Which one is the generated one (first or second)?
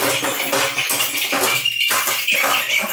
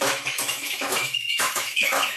second